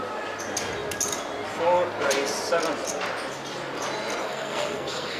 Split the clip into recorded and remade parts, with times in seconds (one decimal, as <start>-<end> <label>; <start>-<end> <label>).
0.0-4.2 recorded; 4.2-5.2 remade